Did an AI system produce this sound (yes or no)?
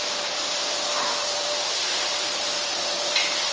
no